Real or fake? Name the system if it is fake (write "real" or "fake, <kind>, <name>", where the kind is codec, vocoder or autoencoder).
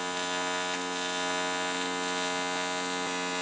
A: real